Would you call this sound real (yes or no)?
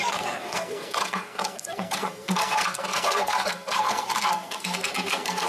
no